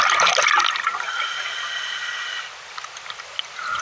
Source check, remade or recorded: recorded